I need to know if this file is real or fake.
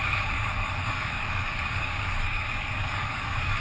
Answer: fake